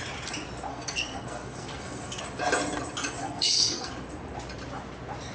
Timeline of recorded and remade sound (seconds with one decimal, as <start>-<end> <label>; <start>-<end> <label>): 0.0-0.7 recorded; 0.7-2.2 remade; 2.2-3.2 recorded; 3.2-3.9 remade; 3.9-5.3 recorded